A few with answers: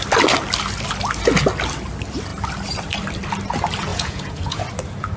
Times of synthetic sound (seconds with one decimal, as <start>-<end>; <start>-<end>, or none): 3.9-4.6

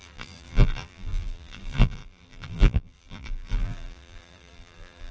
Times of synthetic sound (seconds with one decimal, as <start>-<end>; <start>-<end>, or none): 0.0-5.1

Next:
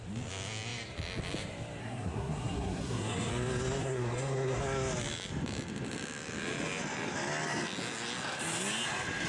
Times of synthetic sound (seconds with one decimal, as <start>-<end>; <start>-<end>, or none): 1.8-3.3; 3.8-4.6